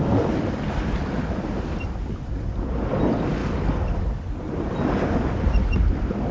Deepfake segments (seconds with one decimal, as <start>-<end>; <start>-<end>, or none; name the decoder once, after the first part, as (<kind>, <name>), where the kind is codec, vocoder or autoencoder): none